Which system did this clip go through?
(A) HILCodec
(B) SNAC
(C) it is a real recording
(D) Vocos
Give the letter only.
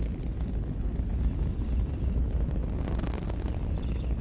C